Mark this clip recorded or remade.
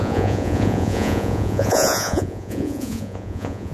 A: remade